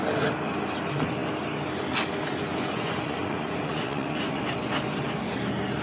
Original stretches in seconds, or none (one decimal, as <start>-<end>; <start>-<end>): 0.0-2.5; 4.4-5.8